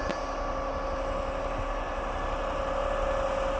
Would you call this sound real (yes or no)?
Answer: yes